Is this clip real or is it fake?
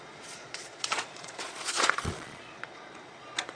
fake